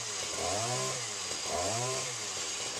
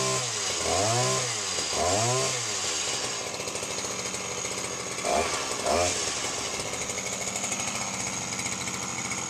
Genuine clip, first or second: second